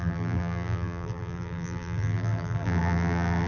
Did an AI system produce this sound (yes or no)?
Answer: yes